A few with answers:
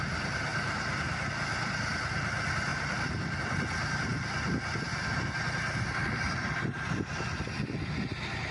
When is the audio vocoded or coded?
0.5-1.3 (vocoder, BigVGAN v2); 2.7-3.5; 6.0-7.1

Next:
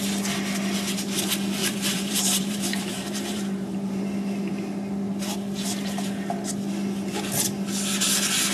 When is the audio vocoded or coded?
1.6-4.0 (vocoder, BigVGAN v2)